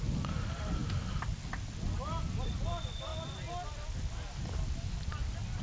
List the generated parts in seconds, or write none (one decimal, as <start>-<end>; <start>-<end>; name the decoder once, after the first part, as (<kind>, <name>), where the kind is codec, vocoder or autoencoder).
none